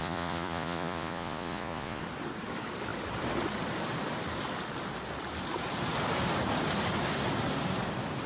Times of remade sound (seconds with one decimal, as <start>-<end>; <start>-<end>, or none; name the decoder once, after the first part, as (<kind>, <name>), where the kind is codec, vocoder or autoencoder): 0.0-2.0 (vocoder, Vocos)